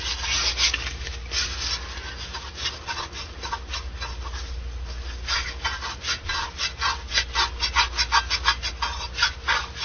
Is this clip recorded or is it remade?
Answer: recorded